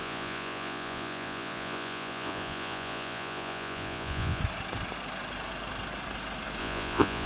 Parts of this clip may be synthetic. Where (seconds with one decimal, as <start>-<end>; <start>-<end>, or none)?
0.0-4.4; 6.6-7.3